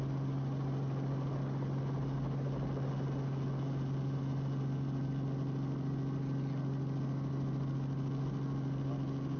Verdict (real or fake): real